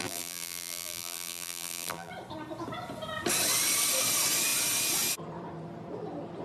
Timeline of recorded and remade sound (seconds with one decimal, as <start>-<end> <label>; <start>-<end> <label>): 0.0-2.1 remade; 2.1-6.4 recorded